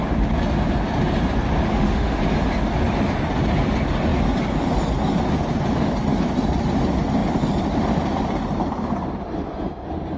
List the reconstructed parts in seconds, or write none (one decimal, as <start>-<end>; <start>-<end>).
1.7-2.2